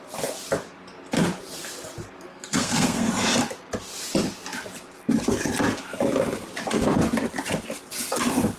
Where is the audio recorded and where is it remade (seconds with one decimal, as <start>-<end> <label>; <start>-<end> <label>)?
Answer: 0.0-2.3 recorded; 2.3-3.1 remade; 3.1-8.6 recorded